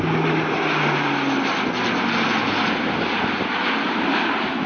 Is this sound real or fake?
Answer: real